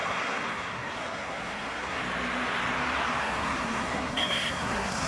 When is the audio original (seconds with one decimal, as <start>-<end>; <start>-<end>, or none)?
2.0-3.2